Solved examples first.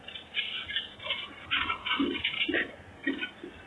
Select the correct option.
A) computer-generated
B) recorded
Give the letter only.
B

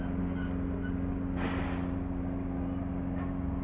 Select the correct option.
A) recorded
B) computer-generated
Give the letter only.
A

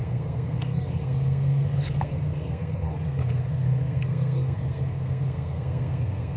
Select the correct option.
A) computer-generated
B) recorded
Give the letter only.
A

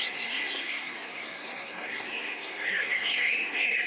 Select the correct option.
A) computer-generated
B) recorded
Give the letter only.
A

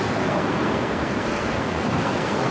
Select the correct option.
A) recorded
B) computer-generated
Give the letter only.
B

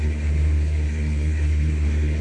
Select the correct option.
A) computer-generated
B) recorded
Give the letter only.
A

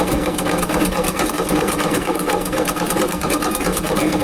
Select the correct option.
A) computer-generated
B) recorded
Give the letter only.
A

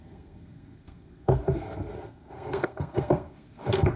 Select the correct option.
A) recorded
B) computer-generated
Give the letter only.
B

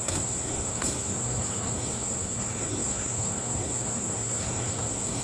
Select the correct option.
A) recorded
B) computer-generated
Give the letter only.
B